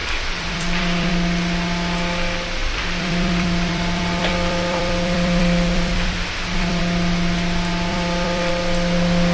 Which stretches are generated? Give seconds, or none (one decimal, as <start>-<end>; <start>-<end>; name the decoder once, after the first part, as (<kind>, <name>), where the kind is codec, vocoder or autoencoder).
0.0-1.1 (vocoder, BigVGAN v2); 2.6-6.8; 7.9-8.5